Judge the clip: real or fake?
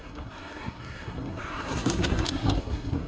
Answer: fake